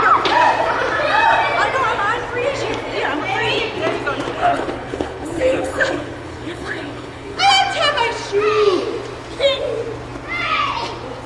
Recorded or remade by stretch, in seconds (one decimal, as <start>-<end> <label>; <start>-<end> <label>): 0.0-4.4 recorded; 4.4-7.4 remade; 7.4-11.3 recorded